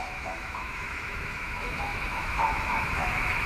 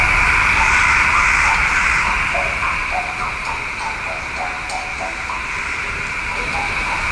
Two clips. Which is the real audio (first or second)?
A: second